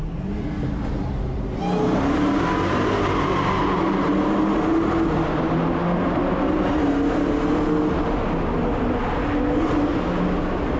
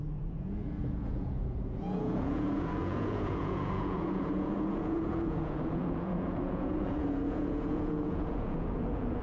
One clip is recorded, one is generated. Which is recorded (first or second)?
first